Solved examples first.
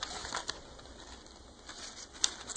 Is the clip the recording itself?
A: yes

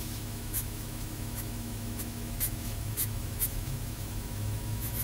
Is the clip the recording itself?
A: no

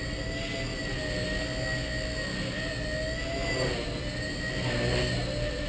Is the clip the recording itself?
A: yes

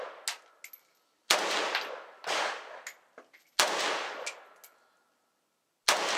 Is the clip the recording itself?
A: yes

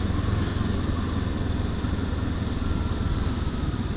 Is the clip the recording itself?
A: yes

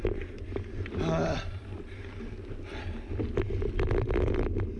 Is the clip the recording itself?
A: yes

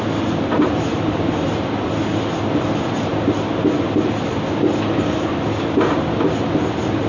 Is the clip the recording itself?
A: yes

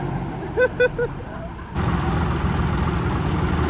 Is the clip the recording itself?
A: yes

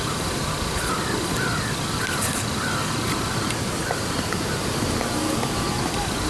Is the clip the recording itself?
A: yes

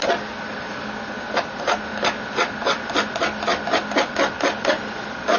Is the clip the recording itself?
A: yes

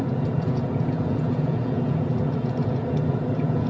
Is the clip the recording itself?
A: no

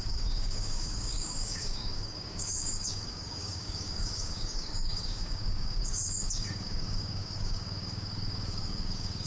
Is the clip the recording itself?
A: no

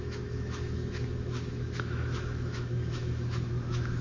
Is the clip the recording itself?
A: no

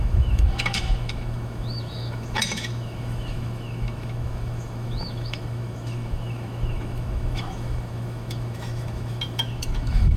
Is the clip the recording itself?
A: no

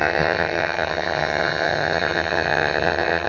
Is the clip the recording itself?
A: no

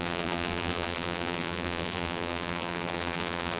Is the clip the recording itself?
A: no